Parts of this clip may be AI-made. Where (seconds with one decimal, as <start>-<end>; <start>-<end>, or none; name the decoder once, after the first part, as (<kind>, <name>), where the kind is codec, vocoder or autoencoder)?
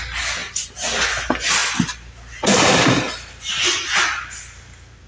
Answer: none